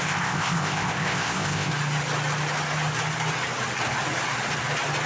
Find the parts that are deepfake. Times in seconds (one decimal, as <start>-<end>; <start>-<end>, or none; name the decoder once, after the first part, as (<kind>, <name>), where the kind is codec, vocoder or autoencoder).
0.0-1.7 (codec, ZipCodec)